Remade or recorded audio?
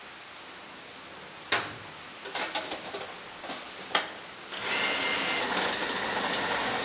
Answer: recorded